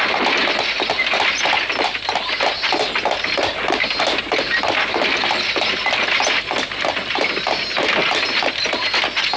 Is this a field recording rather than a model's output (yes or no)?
yes